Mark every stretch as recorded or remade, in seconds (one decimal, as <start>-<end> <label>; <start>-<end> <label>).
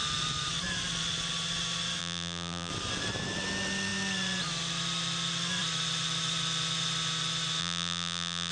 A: 0.0-2.0 recorded; 2.0-2.7 remade; 2.7-7.6 recorded; 7.6-8.5 remade